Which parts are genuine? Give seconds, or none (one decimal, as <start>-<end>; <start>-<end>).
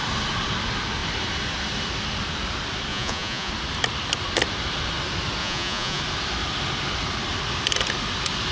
0.0-2.9; 3.5-5.4; 6.0-8.5